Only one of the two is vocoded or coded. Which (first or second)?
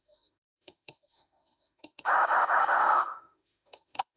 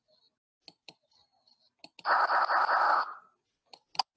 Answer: first